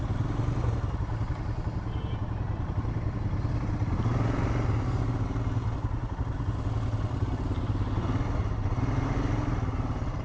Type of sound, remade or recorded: recorded